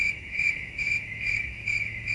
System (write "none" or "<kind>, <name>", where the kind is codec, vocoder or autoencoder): autoencoder, DAC-VAE